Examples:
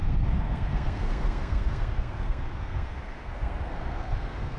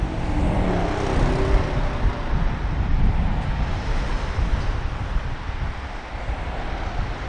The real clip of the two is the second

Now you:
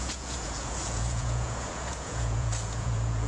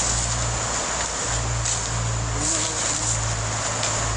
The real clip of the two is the second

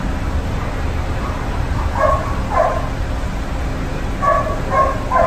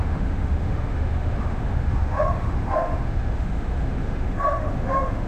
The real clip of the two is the first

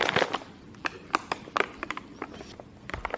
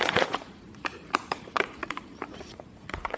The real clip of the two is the first